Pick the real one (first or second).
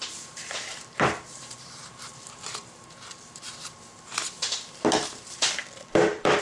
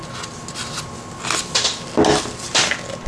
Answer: second